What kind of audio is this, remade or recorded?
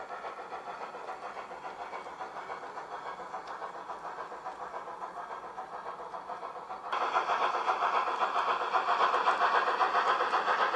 recorded